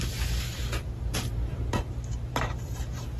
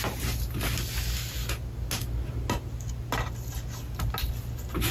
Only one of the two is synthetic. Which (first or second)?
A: first